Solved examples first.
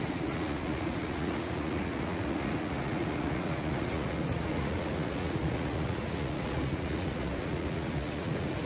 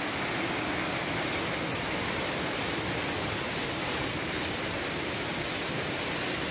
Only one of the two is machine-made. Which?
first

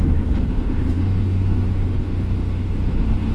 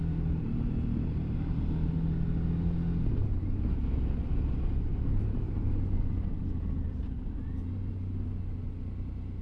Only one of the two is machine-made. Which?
first